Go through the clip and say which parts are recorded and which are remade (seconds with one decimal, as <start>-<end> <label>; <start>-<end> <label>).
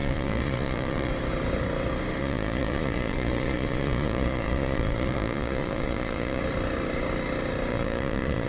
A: 0.0-1.1 remade; 1.1-2.2 recorded; 2.2-6.4 remade; 6.4-7.7 recorded; 7.7-8.5 remade